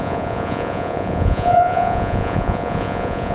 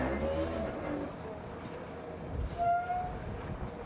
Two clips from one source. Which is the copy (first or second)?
first